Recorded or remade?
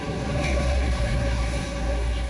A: remade